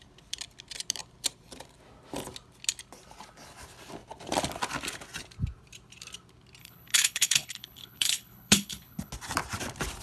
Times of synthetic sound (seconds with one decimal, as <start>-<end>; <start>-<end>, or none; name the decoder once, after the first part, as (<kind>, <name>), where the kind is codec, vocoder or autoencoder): 6.6-9.1 (codec, HILCodec)